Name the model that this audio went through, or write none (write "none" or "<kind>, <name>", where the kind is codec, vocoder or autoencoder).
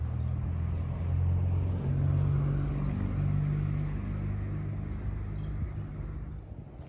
none